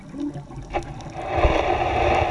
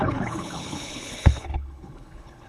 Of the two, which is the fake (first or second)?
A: second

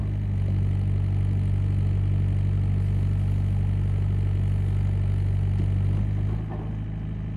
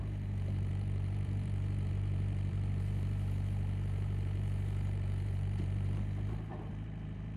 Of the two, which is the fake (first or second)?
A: second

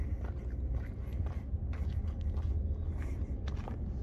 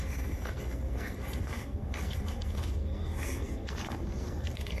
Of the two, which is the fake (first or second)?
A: second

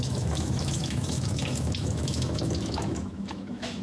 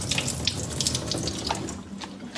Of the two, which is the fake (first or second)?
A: first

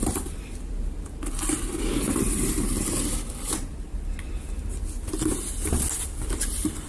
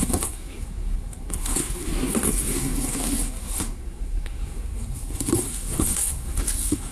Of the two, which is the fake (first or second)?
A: second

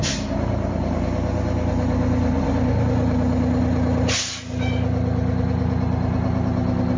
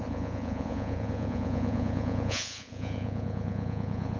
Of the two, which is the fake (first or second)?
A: second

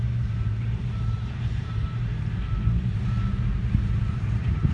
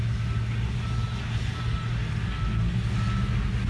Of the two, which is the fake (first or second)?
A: first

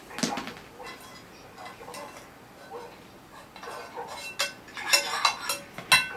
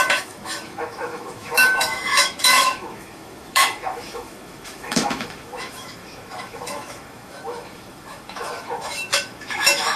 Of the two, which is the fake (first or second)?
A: second